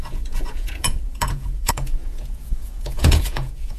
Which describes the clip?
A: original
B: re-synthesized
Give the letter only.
B